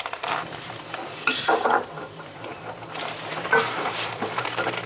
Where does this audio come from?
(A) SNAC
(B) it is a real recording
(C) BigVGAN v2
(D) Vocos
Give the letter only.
C